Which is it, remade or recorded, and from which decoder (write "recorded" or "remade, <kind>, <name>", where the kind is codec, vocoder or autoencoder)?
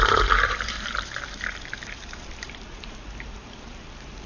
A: remade, vocoder, BigVGAN v2